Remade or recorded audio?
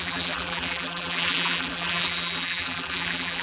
remade